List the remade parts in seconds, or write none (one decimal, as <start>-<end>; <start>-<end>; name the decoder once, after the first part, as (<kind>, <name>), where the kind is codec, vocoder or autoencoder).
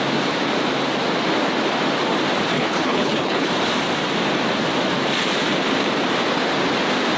2.5-3.5 (codec, HILCodec)